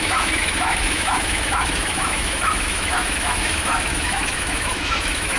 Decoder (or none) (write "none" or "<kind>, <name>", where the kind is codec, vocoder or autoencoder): autoencoder, DAC-VAE